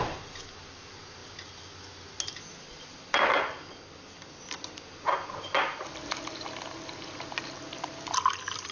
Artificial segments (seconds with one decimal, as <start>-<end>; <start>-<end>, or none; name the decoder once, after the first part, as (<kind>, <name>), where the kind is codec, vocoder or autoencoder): none